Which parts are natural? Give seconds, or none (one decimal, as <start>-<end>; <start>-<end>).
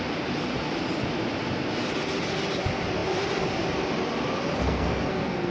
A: 0.0-4.5